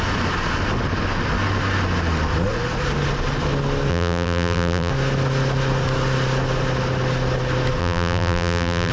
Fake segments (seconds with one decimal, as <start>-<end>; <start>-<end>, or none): 3.9-4.9; 7.8-8.9